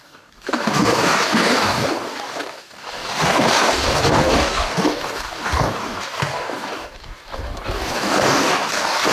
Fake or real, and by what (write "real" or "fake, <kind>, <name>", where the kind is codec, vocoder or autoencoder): fake, codec, DAC